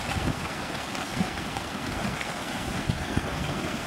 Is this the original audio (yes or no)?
no